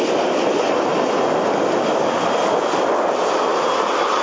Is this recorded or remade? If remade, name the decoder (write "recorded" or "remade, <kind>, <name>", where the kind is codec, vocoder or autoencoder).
recorded